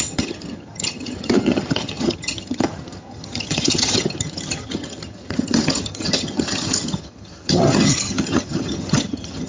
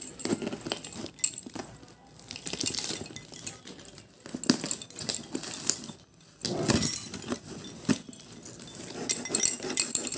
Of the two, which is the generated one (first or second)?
first